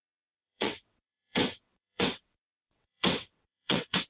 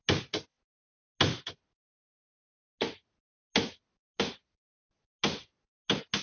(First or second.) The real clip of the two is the second